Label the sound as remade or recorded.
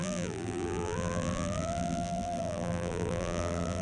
remade